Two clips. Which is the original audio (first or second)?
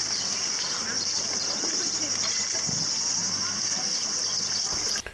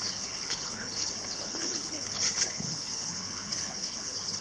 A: first